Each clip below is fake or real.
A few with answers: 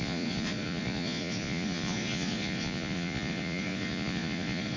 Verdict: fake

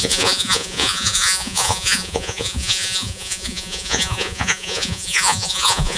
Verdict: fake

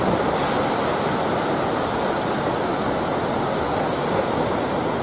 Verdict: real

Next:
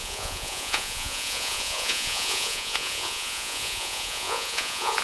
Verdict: fake